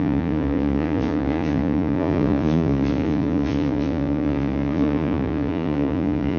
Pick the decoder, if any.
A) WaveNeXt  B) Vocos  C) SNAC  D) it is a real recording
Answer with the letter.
B